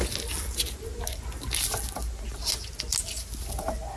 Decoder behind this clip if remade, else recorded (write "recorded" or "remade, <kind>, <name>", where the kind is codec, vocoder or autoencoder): recorded